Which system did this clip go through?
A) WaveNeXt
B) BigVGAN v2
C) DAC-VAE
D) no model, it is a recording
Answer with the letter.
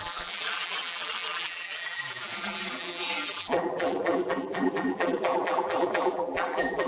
B